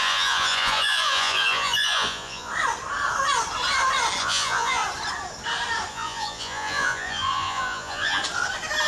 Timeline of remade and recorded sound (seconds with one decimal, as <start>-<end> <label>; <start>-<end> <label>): 0.0-2.5 remade; 2.5-4.2 recorded; 4.2-4.8 remade; 4.8-5.9 recorded; 5.9-8.2 remade; 8.2-8.9 recorded